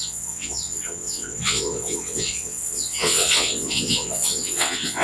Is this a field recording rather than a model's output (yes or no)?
no